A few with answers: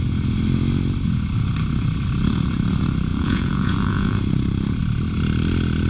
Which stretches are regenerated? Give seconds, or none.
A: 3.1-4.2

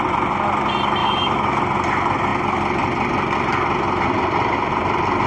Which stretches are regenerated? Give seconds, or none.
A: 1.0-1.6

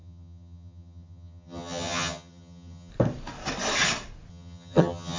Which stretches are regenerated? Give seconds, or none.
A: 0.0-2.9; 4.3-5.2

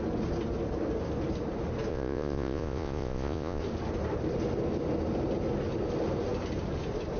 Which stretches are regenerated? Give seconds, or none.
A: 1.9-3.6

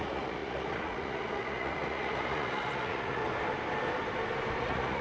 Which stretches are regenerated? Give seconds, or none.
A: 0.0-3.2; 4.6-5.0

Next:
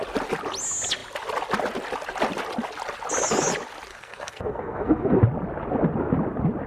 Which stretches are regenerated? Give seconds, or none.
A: 3.9-5.2

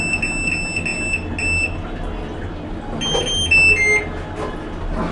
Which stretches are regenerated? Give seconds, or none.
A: none

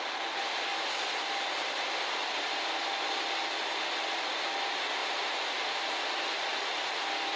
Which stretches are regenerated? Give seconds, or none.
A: 0.7-2.8; 5.0-6.1